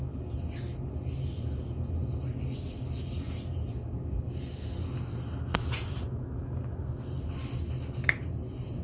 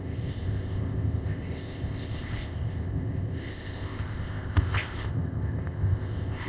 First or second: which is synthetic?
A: second